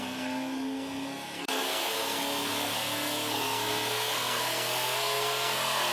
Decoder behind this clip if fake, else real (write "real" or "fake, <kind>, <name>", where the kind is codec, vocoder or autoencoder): fake, codec, SNAC